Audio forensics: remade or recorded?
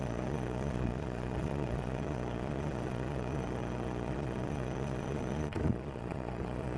remade